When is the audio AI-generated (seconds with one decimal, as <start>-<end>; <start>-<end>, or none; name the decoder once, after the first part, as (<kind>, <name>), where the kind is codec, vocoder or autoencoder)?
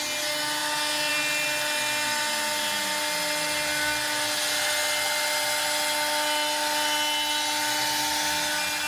none